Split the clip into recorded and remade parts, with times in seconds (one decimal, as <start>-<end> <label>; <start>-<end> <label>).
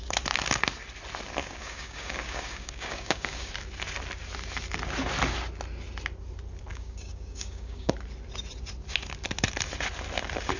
0.0-1.4 recorded; 1.4-3.5 remade; 3.5-6.7 recorded; 6.7-7.9 remade; 7.9-10.6 recorded